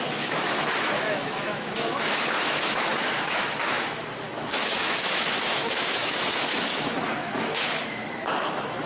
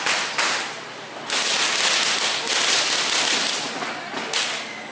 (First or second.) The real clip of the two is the second